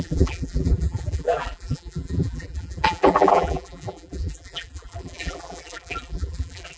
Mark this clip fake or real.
fake